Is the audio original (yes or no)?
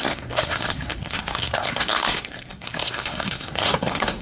no